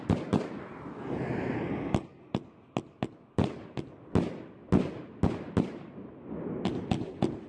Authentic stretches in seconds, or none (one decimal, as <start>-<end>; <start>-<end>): 0.0-7.5

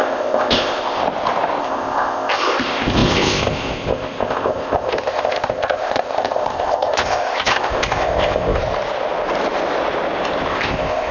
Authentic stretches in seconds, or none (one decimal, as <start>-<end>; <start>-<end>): 1.0-1.6; 8.6-10.5

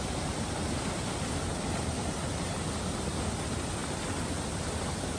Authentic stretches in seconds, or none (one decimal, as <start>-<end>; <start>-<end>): 0.0-5.2

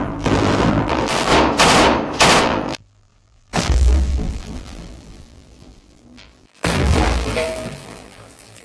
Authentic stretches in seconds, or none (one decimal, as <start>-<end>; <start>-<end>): 1.3-2.4

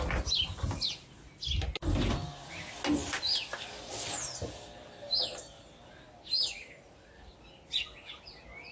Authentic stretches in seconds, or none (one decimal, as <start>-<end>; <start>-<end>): 0.0-8.7

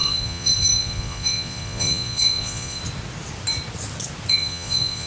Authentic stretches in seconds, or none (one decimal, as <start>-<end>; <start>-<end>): 2.8-4.3

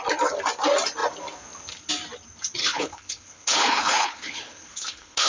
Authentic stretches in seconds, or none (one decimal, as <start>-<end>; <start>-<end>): 0.0-2.6